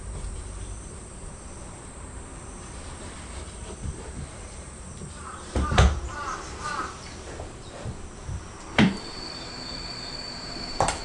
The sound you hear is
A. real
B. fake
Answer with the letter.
B